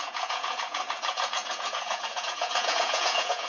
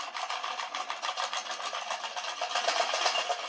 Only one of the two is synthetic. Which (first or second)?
first